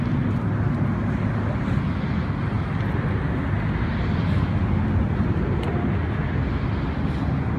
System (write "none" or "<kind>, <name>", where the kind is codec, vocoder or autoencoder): none